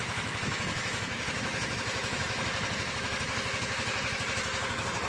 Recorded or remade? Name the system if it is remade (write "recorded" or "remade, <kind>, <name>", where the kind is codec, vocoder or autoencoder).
remade, autoencoder, DAC-VAE